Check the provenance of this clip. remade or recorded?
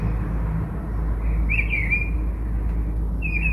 recorded